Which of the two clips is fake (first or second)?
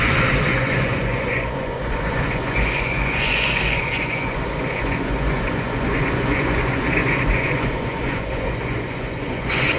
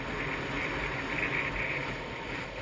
first